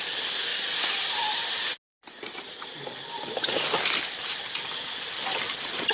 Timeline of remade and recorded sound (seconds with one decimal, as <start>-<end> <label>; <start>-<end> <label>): 0.0-0.5 recorded; 0.5-1.5 remade; 1.5-1.9 recorded; 1.9-5.4 remade; 5.4-5.9 recorded